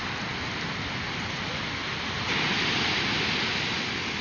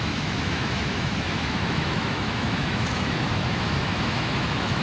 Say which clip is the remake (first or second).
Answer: second